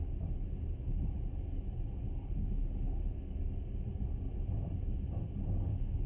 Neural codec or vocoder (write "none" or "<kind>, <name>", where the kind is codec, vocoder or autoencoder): none